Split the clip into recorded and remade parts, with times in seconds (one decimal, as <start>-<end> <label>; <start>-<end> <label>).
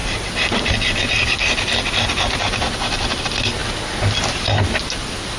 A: 0.0-5.4 recorded